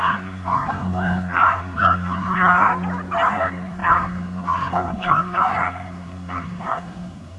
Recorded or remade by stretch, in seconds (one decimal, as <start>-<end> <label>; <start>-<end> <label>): 0.0-2.7 remade; 2.7-3.3 recorded; 3.3-7.4 remade